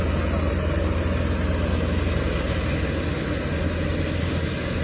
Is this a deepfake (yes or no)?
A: no